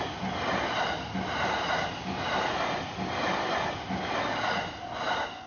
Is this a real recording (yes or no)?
yes